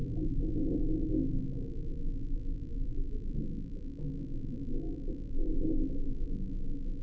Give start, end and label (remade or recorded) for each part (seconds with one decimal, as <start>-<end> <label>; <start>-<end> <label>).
0.0-7.0 recorded